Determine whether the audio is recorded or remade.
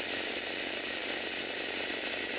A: recorded